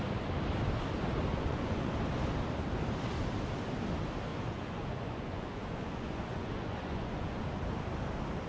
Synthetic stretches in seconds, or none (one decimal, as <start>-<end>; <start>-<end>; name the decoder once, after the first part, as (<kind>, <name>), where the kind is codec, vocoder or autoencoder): 1.3-1.9 (vocoder, Vocos); 4.3-7.4